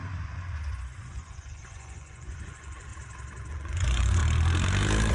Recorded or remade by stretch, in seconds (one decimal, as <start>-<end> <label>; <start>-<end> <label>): 0.0-2.9 remade; 2.9-3.5 recorded; 3.5-4.2 remade; 4.2-5.1 recorded